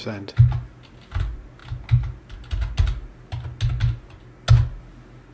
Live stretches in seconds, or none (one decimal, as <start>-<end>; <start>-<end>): 0.0-5.3